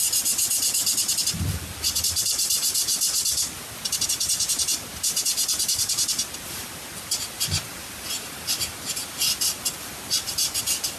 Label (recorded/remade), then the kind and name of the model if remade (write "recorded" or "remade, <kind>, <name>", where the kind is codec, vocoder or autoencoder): recorded